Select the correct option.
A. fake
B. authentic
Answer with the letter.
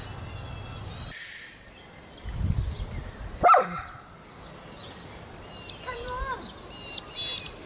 B